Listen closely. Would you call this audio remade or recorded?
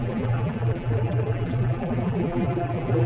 remade